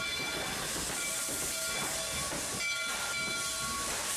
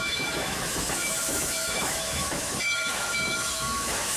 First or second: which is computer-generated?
second